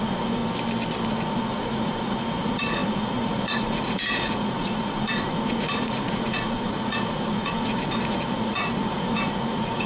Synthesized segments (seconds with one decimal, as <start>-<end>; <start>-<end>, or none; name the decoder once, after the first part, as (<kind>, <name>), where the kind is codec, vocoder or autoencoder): 0.0-0.4 (vocoder, Vocos); 1.1-9.9